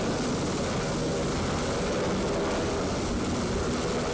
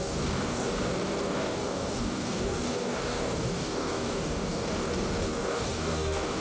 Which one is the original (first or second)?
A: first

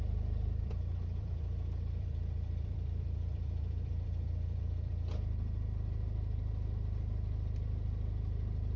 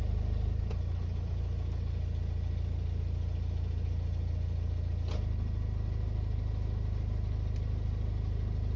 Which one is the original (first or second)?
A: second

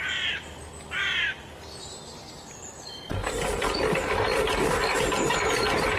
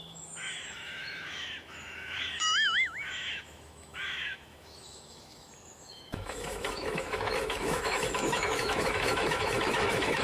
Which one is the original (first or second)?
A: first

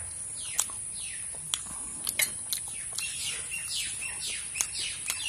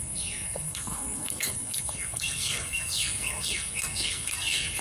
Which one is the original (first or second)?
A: first